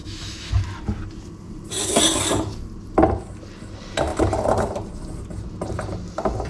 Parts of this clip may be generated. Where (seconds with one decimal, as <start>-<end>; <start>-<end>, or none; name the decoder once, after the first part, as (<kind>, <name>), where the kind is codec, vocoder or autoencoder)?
0.0-0.5 (autoencoder, DAC-VAE)